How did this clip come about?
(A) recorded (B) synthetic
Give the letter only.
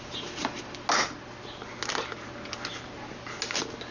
A